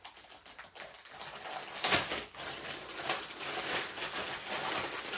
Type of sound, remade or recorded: recorded